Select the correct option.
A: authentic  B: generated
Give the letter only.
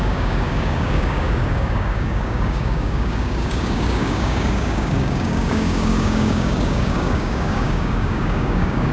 B